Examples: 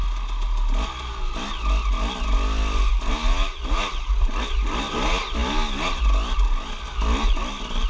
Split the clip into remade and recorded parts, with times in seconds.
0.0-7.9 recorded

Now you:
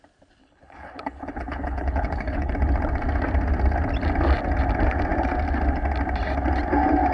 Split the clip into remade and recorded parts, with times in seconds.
0.0-0.4 recorded; 0.4-2.5 remade; 2.5-7.1 recorded

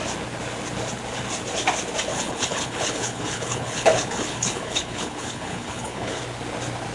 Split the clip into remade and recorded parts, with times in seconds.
0.0-2.1 recorded; 2.1-6.2 remade; 6.2-6.9 recorded

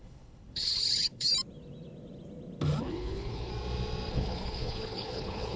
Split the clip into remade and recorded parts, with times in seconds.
0.0-1.3 remade; 1.3-2.8 recorded; 2.8-3.5 remade; 3.5-4.1 recorded; 4.1-5.6 remade

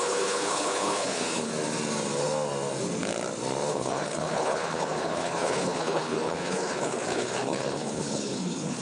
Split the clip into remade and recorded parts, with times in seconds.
0.0-1.5 remade; 1.5-3.7 recorded; 3.7-8.8 remade

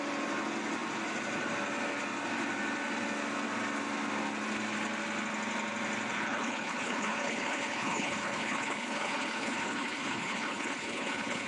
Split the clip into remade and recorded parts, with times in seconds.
0.0-6.1 recorded; 6.1-11.5 remade

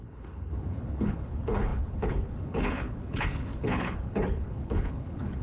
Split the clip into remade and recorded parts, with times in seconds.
0.0-5.4 remade

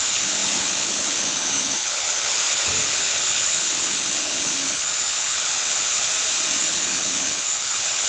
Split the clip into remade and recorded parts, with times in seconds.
0.0-6.1 remade; 6.1-6.6 recorded; 6.6-8.1 remade